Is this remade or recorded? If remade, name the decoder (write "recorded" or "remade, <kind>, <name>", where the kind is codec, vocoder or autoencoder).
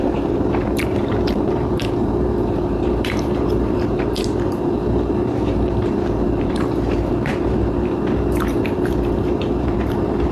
remade, vocoder, BigVGAN v2